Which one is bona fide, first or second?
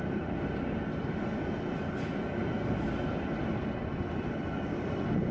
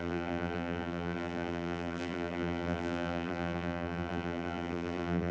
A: first